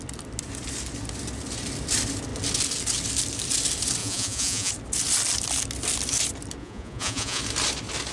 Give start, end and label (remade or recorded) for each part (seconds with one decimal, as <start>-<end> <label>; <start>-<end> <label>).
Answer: 0.0-4.0 recorded; 4.0-4.7 remade; 4.7-6.6 recorded; 6.6-7.4 remade; 7.4-8.1 recorded